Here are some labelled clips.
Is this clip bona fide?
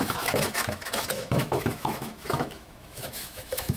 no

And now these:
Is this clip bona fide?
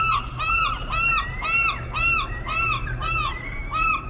no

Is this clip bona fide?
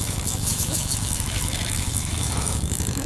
no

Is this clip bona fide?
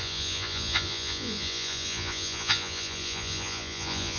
no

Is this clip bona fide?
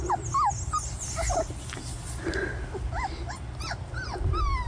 yes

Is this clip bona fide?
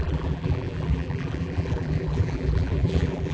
no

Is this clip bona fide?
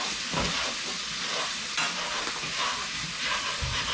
yes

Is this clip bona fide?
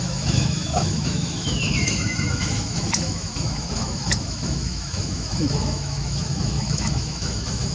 no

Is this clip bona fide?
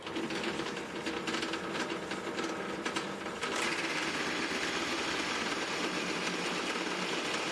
yes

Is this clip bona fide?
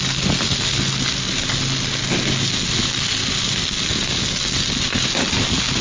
yes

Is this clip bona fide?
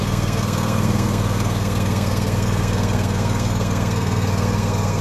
no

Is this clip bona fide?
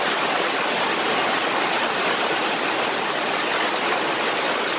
yes